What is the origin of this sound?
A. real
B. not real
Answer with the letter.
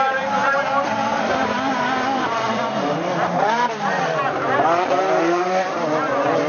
B